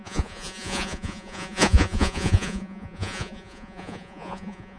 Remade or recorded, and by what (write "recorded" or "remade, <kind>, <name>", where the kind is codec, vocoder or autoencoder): remade, vocoder, Vocos